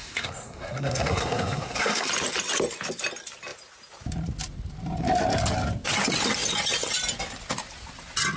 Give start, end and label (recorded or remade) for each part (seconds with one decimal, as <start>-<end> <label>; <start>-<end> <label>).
0.0-2.1 remade; 2.1-8.4 recorded